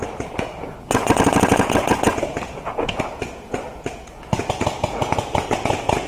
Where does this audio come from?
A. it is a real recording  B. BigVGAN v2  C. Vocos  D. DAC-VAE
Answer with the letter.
C